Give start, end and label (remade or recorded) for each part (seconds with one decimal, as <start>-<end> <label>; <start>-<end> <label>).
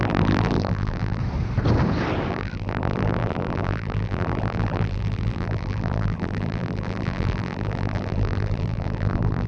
0.0-1.2 remade; 1.2-2.3 recorded; 2.3-9.5 remade